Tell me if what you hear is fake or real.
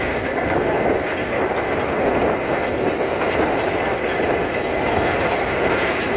real